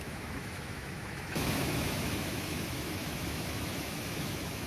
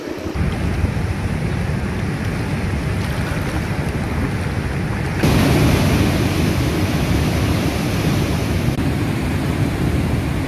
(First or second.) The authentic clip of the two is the second